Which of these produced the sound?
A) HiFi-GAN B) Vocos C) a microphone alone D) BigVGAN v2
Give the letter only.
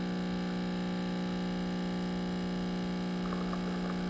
C